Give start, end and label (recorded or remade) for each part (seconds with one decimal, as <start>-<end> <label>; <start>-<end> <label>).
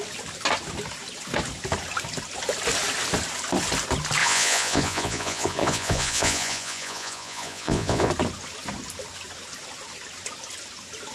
0.0-4.2 recorded; 4.2-8.1 remade; 8.1-11.1 recorded